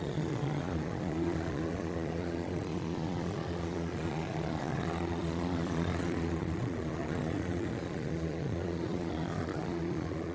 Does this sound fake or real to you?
fake